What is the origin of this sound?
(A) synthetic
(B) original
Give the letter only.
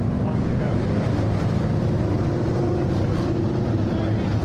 B